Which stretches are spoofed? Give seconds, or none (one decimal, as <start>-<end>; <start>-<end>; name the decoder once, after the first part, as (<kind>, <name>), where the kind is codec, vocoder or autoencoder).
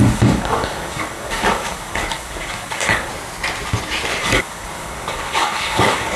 0.0-3.1 (codec, DAC); 4.2-6.2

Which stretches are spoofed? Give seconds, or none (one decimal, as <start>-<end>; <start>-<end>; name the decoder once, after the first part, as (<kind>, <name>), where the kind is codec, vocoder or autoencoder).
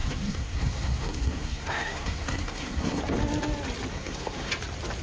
0.0-3.0 (codec, SNAC); 3.9-4.5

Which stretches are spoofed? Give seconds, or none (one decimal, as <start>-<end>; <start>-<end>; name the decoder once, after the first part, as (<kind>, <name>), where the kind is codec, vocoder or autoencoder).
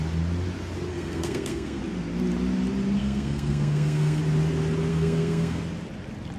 0.9-1.8 (codec, SNAC); 3.0-4.2; 4.9-5.6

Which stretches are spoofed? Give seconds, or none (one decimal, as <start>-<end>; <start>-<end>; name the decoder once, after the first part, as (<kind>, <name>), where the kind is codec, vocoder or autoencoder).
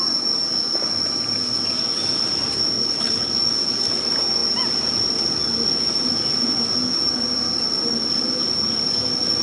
2.8-3.3 (codec, HILCodec)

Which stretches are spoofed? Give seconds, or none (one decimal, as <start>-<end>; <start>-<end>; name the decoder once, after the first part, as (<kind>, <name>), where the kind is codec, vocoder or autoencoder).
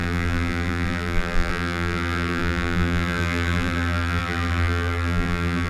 0.0-5.7 (vocoder, BigVGAN v2)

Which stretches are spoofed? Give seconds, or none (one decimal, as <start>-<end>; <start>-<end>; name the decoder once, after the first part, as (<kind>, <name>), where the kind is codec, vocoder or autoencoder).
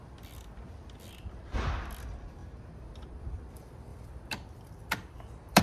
3.9-5.6 (vocoder, BigVGAN v2)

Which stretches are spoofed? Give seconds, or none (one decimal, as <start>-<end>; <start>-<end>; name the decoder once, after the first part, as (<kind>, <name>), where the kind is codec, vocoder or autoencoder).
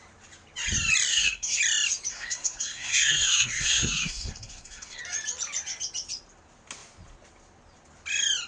1.1-1.6 (codec, SNAC); 2.1-5.0